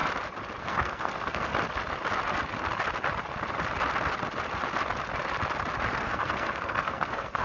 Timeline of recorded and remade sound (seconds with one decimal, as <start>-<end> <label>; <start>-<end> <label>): 0.0-0.6 recorded; 0.6-1.5 remade; 1.5-5.9 recorded; 5.9-7.4 remade